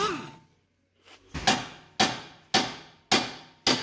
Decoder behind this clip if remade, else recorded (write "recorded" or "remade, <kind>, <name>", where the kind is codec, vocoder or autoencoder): recorded